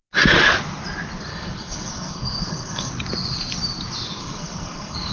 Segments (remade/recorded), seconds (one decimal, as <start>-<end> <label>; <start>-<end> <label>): 0.0-1.3 recorded; 1.3-2.9 remade; 2.9-4.2 recorded; 4.2-5.1 remade